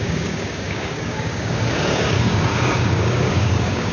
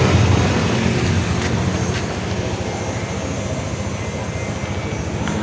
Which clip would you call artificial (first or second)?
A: first